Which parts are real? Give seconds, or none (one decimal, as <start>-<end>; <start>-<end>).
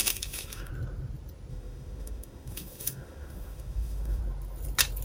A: 0.7-1.5; 4.2-5.0